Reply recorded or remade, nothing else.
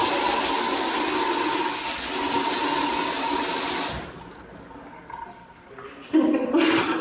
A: recorded